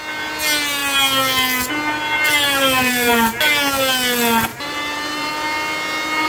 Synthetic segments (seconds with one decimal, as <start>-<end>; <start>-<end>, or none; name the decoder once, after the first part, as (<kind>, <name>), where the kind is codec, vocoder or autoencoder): 2.4-3.3 (vocoder, BigVGAN v2); 4.5-5.3